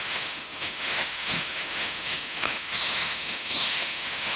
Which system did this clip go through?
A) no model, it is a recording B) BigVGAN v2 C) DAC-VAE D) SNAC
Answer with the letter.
C